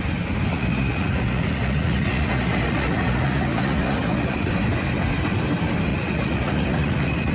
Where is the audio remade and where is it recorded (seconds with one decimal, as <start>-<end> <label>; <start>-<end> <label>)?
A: 0.0-0.5 recorded; 0.5-4.5 remade; 4.5-5.9 recorded; 5.9-7.3 remade